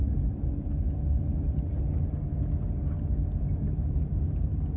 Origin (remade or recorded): recorded